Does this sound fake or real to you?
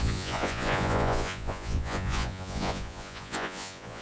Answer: fake